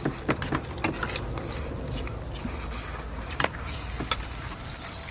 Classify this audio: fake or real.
real